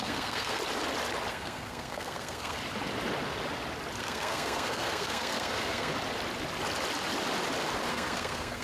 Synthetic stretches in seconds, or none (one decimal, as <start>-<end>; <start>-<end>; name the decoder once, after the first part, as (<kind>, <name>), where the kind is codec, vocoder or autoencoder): 0.0-0.6 (codec, SNAC); 1.3-2.6; 4.0-5.9; 7.9-8.6